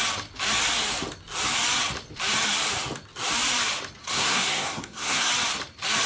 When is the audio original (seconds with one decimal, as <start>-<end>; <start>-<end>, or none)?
0.0-4.0; 5.3-6.1